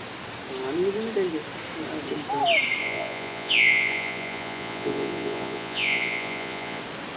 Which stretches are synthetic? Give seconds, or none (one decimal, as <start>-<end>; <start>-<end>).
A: 2.8-6.8